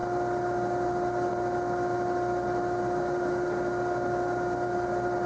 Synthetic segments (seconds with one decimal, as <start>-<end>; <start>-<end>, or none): none